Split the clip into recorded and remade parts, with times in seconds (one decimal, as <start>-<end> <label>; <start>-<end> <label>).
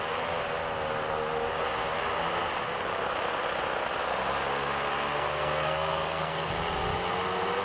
0.0-5.1 recorded; 5.1-6.5 remade; 6.5-7.6 recorded